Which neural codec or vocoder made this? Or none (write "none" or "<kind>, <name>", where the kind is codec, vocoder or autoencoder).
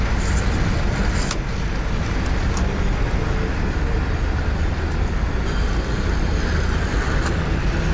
none